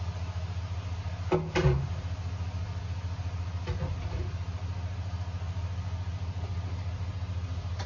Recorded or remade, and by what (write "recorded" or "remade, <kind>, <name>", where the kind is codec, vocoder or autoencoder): recorded